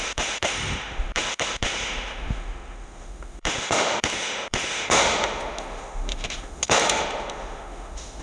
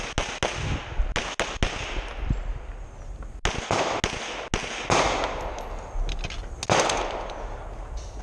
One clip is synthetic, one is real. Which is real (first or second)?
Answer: second